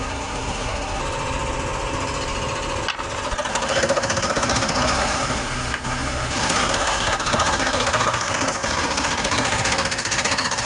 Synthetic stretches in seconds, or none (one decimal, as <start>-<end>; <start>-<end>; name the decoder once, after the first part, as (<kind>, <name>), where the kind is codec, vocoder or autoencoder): 0.0-1.0 (codec, SNAC); 3.5-10.7